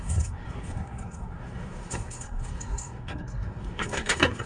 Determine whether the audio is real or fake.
fake